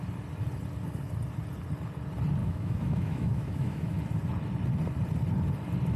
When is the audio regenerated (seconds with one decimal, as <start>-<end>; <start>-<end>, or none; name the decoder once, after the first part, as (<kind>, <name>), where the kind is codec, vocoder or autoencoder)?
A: 2.4-4.0 (autoencoder, DAC-VAE)